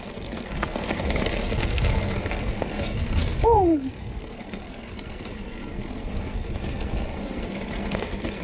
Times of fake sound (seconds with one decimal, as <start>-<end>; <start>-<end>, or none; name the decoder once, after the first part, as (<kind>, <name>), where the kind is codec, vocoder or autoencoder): 0.0-8.4 (codec, SNAC)